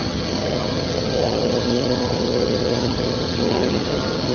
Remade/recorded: remade